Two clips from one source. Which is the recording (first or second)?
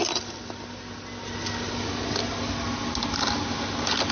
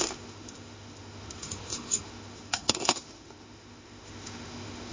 first